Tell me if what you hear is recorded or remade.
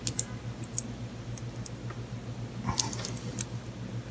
recorded